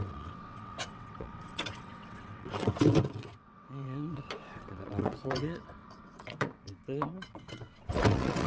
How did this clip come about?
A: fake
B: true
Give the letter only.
A